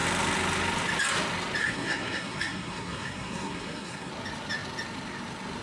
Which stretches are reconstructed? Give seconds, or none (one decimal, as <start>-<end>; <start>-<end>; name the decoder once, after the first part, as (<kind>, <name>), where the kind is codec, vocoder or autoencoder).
1.6-4.1 (codec, SNAC)